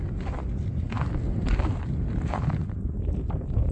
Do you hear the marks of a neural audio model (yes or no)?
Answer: no